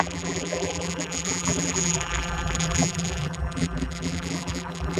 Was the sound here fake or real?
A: fake